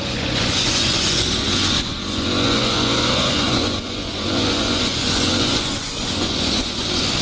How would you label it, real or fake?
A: fake